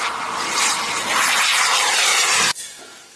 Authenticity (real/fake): real